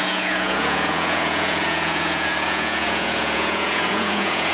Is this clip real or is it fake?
fake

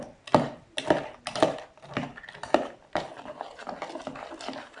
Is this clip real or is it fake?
real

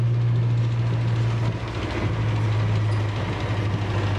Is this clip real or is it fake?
real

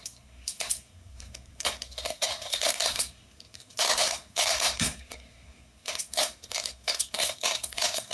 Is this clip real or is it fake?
fake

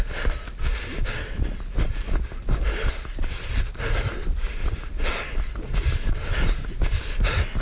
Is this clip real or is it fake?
real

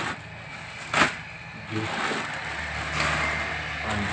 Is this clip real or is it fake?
real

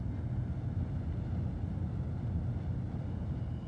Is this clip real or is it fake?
real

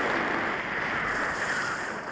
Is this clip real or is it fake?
real